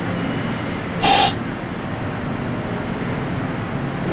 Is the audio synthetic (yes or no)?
no